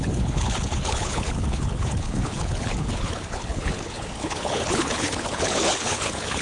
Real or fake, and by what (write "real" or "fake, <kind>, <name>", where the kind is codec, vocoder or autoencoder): fake, codec, HILCodec